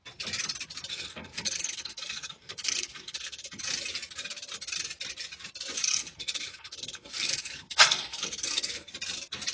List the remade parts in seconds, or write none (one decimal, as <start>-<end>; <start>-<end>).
0.9-3.6; 5.8-8.9